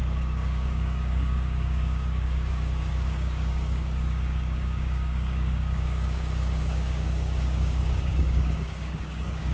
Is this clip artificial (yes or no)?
yes